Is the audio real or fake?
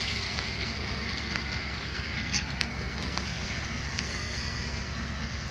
fake